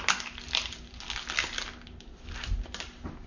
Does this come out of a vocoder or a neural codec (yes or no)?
no